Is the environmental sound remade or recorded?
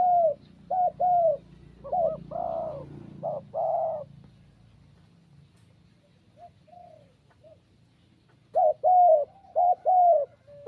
recorded